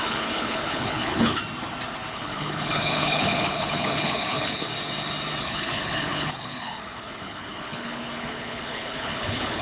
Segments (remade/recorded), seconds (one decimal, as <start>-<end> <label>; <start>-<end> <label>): 0.0-1.4 remade; 1.4-2.1 recorded; 2.1-4.7 remade; 4.7-5.4 recorded; 5.4-9.6 remade